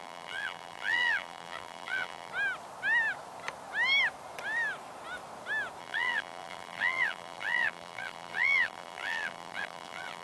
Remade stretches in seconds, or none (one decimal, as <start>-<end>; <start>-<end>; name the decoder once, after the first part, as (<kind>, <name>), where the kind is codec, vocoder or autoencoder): 0.0-2.3 (vocoder, BigVGAN v2); 5.8-10.2